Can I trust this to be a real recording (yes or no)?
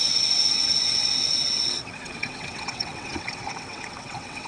no